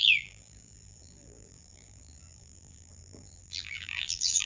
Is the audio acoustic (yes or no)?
no